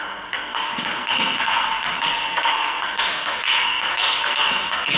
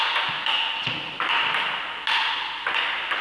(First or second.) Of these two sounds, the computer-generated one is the first